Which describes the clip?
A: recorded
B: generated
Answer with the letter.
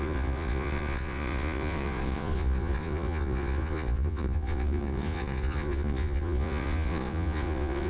B